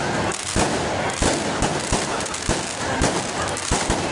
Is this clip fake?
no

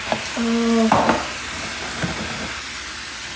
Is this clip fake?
no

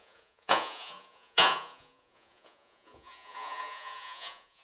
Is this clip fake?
yes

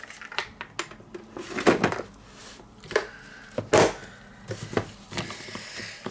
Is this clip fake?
no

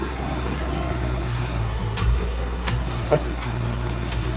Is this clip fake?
yes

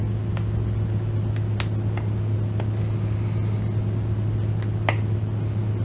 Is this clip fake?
no